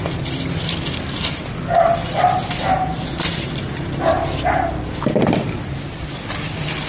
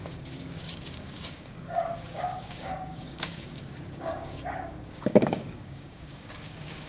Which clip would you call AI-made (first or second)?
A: second